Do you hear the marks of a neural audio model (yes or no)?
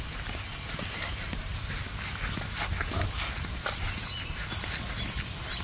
no